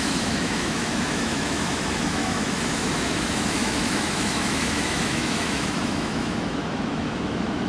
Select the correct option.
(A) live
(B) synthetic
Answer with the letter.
B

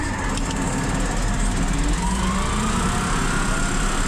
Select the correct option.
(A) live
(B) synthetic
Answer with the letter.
A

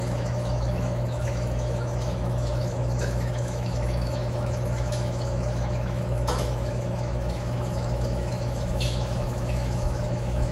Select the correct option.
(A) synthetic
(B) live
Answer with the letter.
A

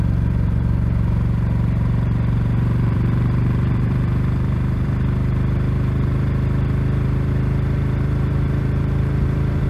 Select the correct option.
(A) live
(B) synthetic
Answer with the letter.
B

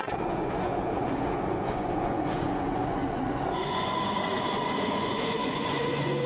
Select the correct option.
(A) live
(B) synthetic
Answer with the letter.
B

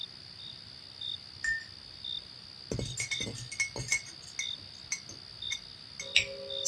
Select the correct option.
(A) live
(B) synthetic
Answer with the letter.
A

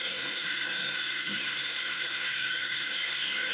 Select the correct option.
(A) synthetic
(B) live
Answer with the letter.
A